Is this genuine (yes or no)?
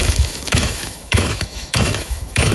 no